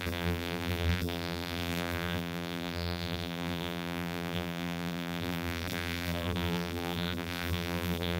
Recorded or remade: remade